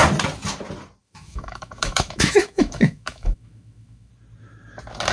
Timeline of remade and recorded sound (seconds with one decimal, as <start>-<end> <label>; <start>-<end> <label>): 0.0-1.0 recorded; 1.0-4.1 remade; 4.1-5.1 recorded

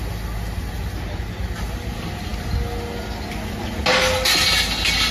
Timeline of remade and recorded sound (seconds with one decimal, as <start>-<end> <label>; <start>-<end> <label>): 0.0-5.1 recorded

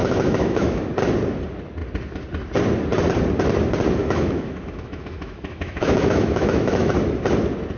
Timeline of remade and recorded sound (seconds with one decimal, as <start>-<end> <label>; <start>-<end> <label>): 0.0-0.9 remade; 0.9-4.0 recorded; 4.0-6.9 remade; 6.9-7.8 recorded

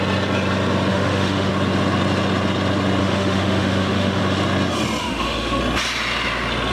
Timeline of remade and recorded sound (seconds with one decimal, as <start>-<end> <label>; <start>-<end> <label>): 0.0-0.9 recorded; 0.9-1.5 remade; 1.5-3.0 recorded; 3.0-4.2 remade; 4.2-5.0 recorded; 5.0-5.6 remade; 5.6-6.7 recorded

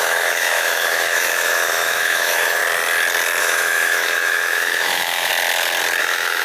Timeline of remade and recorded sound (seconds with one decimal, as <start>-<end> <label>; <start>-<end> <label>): 0.0-2.6 remade; 2.6-3.4 recorded; 3.4-5.3 remade; 5.3-6.0 recorded; 6.0-6.4 remade

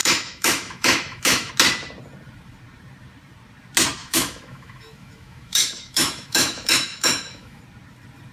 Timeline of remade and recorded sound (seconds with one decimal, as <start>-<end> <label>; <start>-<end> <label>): 0.0-1.5 remade; 1.5-4.0 recorded; 4.0-7.6 remade; 7.6-8.3 recorded

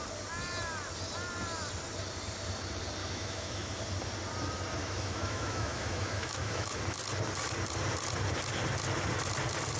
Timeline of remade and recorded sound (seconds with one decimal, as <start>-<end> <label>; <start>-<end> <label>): 0.0-3.0 recorded; 3.0-3.8 remade; 3.8-4.8 recorded; 4.8-6.8 remade; 6.8-9.8 recorded